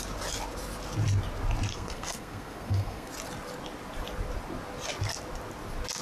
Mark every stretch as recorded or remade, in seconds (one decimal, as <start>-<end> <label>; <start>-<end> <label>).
0.0-1.7 recorded; 1.7-3.1 remade; 3.1-6.0 recorded